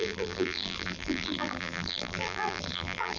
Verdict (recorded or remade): remade